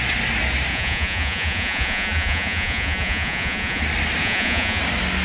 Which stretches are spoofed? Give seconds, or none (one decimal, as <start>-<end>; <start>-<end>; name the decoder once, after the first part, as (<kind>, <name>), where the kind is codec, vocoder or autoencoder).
0.7-3.8 (vocoder, Vocos); 4.2-4.8